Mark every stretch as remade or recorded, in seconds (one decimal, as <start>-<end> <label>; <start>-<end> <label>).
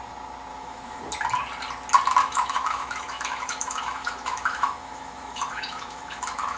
0.0-0.5 recorded; 0.5-1.0 remade; 1.0-2.2 recorded; 2.2-6.6 remade